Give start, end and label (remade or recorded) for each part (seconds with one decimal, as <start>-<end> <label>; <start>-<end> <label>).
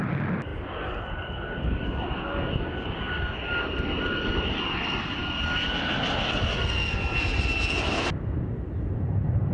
0.0-9.5 recorded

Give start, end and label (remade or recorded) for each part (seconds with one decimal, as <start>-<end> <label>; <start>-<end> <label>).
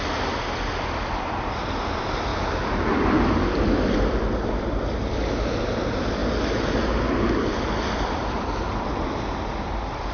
0.0-2.3 remade; 2.3-3.1 recorded; 3.1-6.2 remade; 6.2-7.3 recorded; 7.3-10.1 remade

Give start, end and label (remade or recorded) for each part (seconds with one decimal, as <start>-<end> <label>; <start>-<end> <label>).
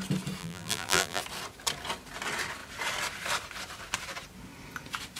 0.0-0.4 recorded; 0.4-1.2 remade; 1.2-5.2 recorded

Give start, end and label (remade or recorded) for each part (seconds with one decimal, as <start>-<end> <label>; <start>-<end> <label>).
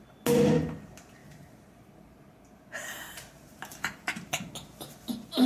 0.0-1.2 recorded; 1.2-4.5 remade; 4.5-5.5 recorded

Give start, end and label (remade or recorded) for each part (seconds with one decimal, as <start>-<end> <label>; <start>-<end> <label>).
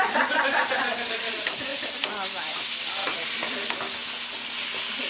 0.0-3.0 recorded; 3.0-3.5 remade; 3.5-5.1 recorded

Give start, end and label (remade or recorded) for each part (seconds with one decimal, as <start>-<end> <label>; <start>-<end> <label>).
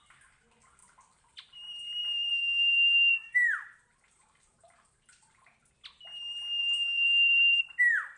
0.0-0.8 recorded; 0.8-5.7 remade; 5.7-6.6 recorded; 6.6-7.6 remade; 7.6-8.2 recorded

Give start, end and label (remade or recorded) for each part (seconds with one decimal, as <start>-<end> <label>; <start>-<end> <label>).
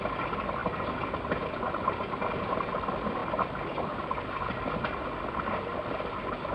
0.0-6.5 recorded